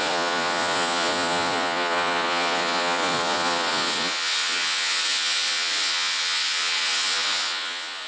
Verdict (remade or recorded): remade